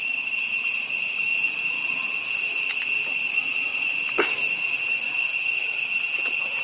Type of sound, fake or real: real